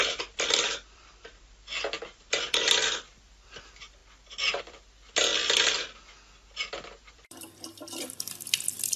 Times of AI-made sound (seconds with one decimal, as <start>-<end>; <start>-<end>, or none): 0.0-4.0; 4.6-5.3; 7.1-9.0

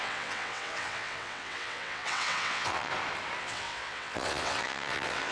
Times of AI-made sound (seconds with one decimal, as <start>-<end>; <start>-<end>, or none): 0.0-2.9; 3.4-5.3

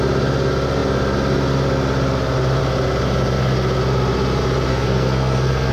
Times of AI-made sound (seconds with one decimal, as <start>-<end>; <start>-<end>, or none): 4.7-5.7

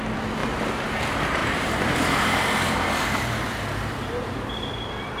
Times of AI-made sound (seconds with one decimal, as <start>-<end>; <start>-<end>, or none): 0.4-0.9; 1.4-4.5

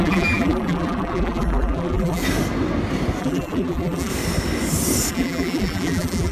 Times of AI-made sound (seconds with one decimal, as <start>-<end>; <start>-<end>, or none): 0.0-2.2; 3.2-4.1; 5.1-6.3

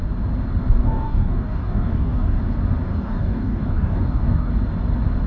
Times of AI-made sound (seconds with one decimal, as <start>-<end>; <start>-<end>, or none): 0.8-2.4; 2.9-4.5